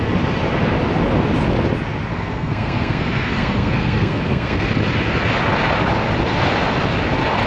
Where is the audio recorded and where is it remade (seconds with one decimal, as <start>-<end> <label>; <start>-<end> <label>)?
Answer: 0.0-2.1 recorded; 2.1-4.7 remade; 4.7-7.5 recorded